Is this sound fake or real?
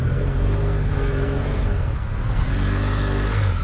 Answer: fake